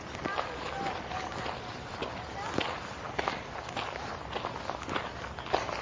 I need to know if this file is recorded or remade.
recorded